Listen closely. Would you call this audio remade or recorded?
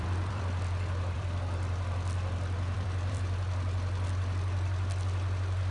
remade